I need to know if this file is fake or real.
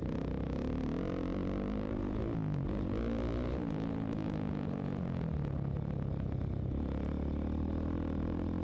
real